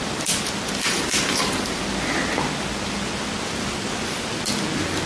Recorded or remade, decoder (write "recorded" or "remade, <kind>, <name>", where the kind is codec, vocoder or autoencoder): recorded